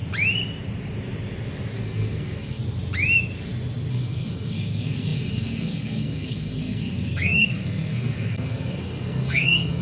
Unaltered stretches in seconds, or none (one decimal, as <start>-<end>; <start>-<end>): 0.0-1.8; 2.6-3.9